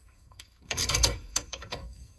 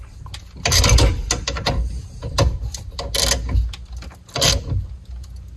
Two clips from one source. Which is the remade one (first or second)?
first